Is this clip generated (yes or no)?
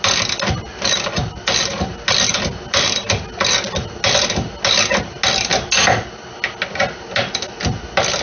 no